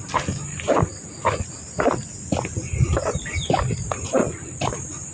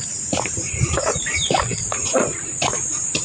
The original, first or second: first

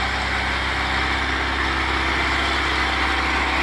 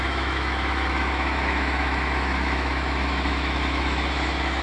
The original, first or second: first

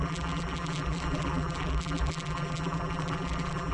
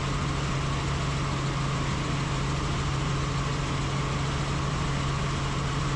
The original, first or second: second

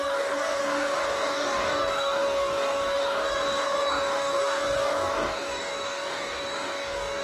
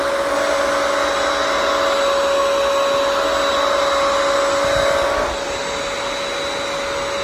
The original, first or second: second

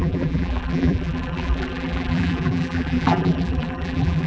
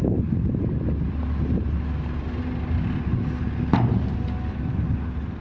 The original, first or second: second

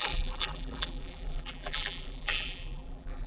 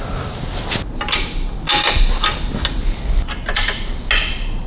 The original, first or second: second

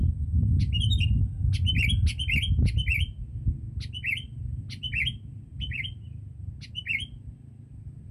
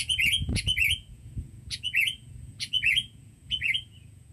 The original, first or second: first